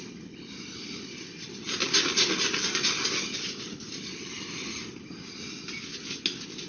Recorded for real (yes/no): yes